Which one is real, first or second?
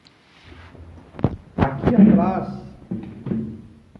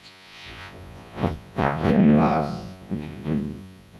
first